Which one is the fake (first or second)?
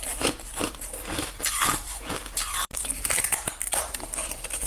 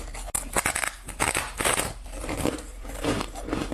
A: first